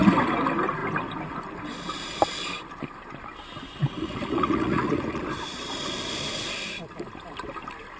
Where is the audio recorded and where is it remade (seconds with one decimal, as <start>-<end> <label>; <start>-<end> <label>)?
0.0-3.8 recorded; 3.8-5.2 remade; 5.2-8.0 recorded